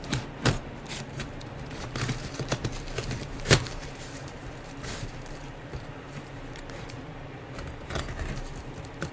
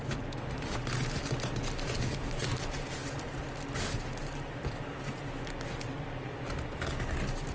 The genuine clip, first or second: second